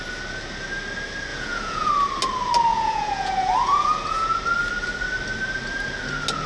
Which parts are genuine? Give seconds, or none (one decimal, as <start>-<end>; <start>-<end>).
0.0-1.3; 1.9-2.7; 4.4-6.5